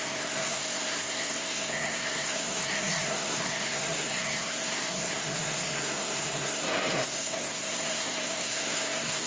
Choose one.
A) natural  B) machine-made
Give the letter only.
B